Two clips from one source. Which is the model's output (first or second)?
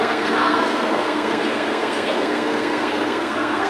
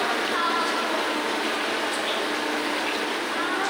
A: first